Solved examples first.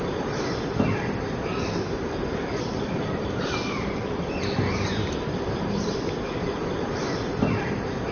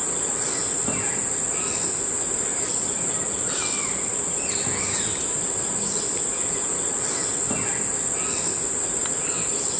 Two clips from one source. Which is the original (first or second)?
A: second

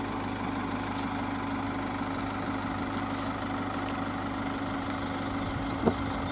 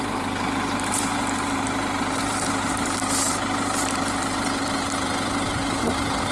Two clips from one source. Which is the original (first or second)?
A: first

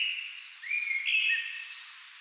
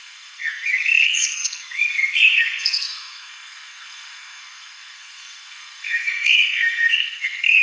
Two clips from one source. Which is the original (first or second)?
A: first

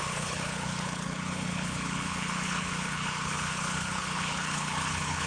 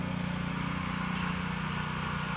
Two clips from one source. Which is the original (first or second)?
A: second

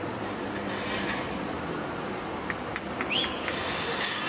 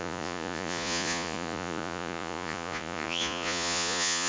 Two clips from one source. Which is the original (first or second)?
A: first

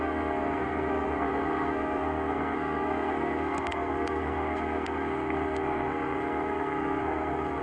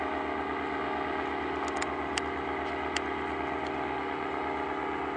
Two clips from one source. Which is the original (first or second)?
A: second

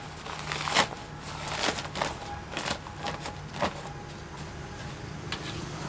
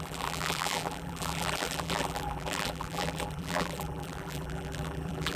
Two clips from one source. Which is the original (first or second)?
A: first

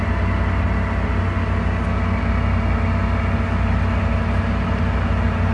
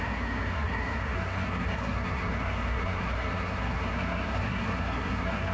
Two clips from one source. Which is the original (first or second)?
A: first